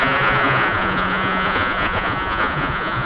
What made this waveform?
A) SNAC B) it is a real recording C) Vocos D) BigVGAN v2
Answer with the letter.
C